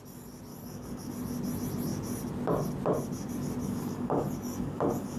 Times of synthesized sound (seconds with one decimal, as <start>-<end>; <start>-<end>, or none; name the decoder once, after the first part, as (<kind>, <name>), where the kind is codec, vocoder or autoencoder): 0.5-1.1 (codec, DAC); 3.6-5.2